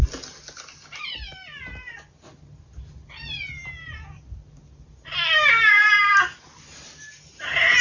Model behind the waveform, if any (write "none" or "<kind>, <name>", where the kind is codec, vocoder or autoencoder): none